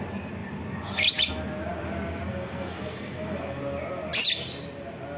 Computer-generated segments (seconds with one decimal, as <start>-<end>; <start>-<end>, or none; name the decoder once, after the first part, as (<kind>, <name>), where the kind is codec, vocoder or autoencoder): 2.3-3.6 (codec, SNAC)